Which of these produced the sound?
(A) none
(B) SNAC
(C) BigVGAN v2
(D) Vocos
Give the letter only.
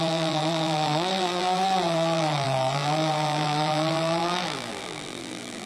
C